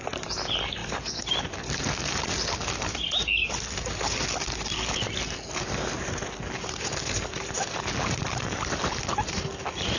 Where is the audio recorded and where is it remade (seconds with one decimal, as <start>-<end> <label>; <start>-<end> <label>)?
0.0-0.8 recorded; 0.8-1.4 remade; 1.4-10.0 recorded

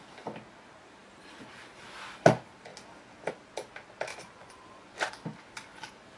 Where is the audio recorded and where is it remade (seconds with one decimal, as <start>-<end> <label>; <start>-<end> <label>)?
0.0-4.1 recorded; 4.1-5.1 remade; 5.1-6.2 recorded